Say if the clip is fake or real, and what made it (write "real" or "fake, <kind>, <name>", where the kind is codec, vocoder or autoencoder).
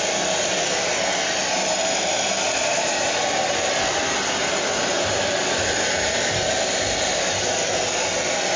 real